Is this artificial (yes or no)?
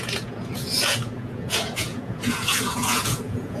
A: yes